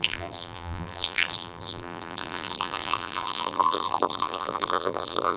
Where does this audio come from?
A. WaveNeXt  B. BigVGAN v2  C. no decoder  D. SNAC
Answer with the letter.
B